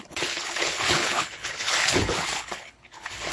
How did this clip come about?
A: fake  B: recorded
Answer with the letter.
A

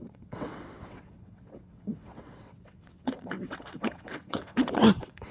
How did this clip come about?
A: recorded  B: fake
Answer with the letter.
B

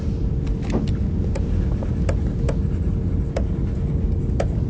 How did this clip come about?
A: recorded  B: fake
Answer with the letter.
A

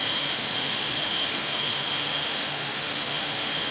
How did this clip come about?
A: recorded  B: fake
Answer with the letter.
B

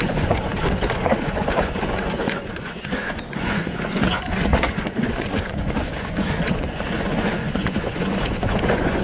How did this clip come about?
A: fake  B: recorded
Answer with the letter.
A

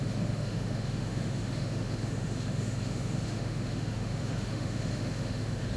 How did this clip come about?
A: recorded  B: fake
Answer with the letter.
B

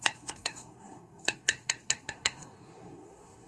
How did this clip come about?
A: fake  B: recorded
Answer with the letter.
A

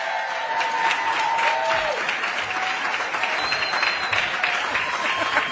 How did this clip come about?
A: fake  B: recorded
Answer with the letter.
B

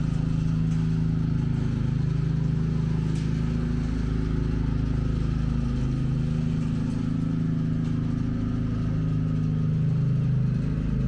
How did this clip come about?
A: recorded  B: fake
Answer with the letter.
A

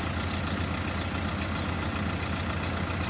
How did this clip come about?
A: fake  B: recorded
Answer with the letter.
B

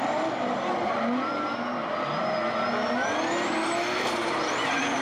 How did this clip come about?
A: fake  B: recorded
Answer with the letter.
B